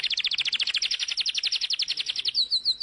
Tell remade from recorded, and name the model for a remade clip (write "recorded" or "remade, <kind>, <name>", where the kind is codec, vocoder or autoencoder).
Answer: recorded